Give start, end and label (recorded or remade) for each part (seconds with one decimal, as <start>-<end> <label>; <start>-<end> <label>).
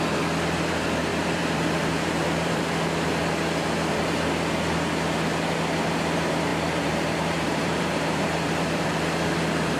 0.0-1.1 recorded; 1.1-2.6 remade; 2.6-6.5 recorded; 6.5-9.8 remade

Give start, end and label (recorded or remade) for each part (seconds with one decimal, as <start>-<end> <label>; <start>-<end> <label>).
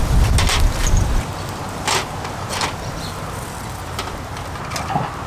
0.0-0.8 recorded; 0.8-1.6 remade; 1.6-5.3 recorded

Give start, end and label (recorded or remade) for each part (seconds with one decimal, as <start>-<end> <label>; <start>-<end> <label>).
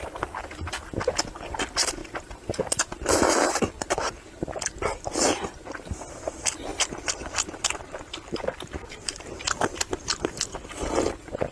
0.0-6.7 recorded; 6.7-10.3 remade; 10.3-11.5 recorded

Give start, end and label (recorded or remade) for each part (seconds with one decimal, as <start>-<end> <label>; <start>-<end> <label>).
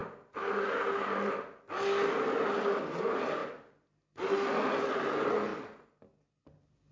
0.0-6.9 recorded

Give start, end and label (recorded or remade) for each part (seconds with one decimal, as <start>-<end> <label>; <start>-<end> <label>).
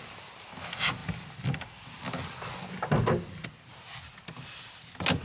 0.0-5.2 recorded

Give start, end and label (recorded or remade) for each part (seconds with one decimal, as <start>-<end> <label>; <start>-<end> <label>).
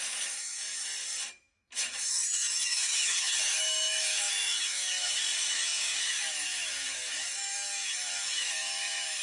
0.0-0.9 remade; 0.9-1.4 recorded; 1.4-9.2 remade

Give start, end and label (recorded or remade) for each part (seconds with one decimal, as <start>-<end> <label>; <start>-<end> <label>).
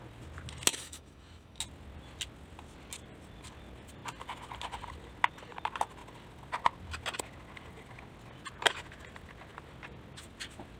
0.0-0.7 recorded; 0.7-1.6 remade; 1.6-10.8 recorded